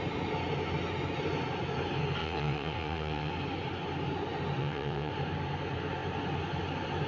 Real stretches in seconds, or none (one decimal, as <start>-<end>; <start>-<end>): 0.0-2.2; 3.3-4.6; 5.1-7.1